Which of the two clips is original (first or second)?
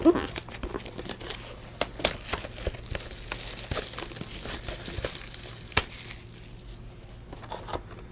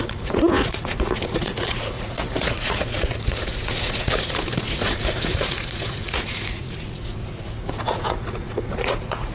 first